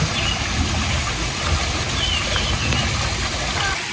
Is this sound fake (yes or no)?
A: no